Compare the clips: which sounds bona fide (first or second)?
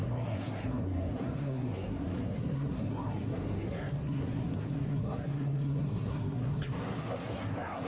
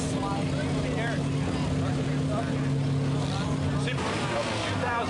second